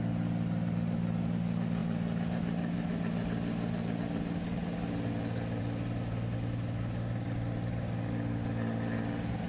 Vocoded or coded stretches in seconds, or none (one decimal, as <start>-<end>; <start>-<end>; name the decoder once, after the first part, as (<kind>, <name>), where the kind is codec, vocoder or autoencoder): none